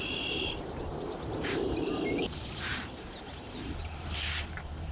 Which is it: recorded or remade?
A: remade